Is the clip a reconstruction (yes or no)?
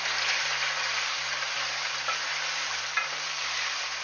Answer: yes